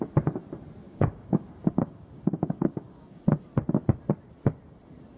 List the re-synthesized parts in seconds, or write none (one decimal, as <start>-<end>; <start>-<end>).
0.8-3.2